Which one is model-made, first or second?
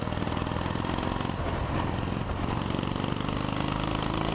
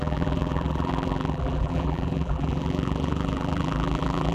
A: second